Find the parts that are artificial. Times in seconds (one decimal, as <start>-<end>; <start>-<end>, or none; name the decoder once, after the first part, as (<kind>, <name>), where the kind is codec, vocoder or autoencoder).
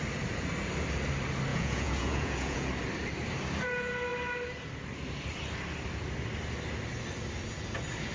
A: 1.5-2.7 (vocoder, Vocos)